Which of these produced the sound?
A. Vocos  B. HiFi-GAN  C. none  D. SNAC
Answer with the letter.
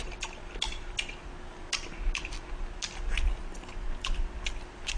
C